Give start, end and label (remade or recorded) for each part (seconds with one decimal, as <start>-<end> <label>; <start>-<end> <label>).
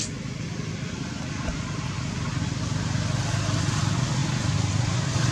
0.0-5.3 recorded